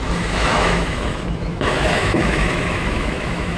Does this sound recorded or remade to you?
remade